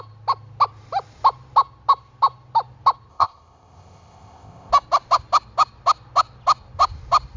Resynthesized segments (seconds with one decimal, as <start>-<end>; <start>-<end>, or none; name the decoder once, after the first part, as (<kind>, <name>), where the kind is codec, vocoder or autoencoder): 3.1-4.7 (codec, ZipCodec)